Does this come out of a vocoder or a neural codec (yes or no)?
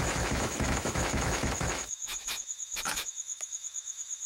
yes